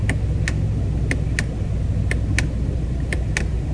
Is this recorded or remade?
recorded